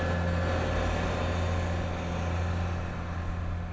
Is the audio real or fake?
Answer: real